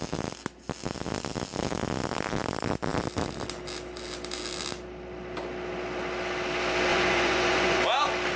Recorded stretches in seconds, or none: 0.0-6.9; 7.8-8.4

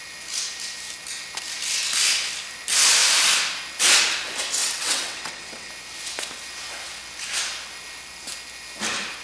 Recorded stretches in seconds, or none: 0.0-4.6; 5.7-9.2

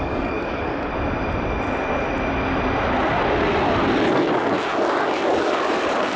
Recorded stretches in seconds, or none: 0.9-4.1

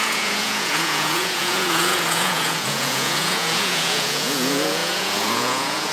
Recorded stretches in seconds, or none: none

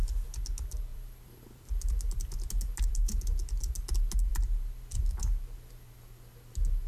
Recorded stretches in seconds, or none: 0.0-0.9; 2.2-6.9